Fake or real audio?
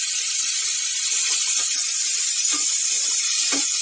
fake